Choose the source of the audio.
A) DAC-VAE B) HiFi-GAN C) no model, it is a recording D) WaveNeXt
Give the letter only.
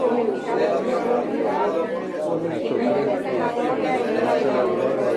C